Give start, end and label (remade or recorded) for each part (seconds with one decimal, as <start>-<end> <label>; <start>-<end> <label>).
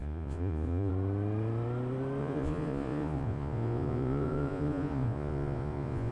0.0-0.9 remade; 0.9-2.2 recorded; 2.2-6.1 remade